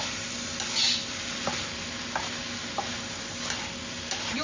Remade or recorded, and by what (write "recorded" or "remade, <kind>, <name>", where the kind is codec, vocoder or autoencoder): recorded